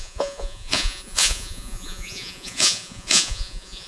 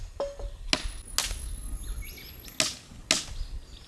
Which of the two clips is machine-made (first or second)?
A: first